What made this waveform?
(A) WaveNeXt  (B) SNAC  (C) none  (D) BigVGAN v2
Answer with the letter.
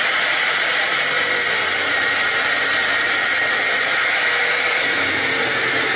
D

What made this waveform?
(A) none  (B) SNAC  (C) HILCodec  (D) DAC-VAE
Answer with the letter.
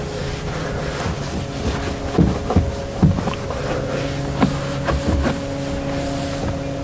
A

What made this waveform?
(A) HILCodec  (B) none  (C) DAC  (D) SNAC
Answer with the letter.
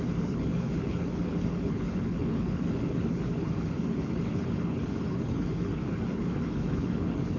A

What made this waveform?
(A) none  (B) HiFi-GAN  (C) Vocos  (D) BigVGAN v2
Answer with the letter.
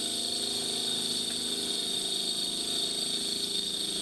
A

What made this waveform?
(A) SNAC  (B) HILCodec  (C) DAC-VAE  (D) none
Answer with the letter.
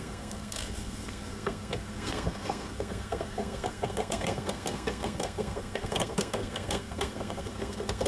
A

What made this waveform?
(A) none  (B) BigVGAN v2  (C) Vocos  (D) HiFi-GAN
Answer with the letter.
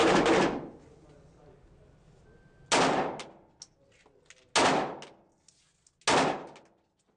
A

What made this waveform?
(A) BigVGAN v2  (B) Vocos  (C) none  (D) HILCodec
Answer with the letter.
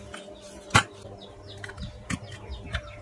A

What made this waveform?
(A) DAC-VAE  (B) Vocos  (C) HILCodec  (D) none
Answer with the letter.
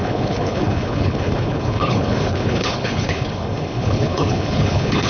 C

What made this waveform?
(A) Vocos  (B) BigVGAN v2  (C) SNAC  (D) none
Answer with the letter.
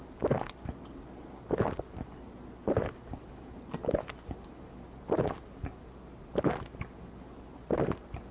D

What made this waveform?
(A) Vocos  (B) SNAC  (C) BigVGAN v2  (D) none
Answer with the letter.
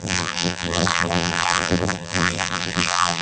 C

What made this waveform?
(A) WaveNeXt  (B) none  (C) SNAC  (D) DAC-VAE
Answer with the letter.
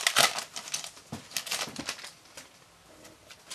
B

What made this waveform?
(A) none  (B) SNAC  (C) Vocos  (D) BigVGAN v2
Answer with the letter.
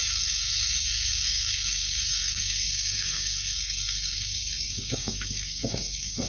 B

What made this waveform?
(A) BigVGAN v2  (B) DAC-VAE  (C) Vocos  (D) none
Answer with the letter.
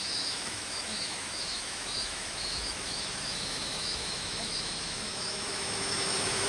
B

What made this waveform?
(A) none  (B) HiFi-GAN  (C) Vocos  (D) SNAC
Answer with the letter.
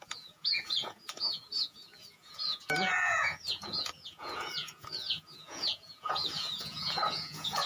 C